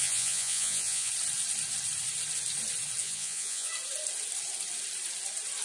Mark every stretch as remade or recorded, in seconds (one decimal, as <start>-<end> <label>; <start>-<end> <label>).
0.0-1.1 remade; 1.1-3.0 recorded; 3.0-3.7 remade; 3.7-5.6 recorded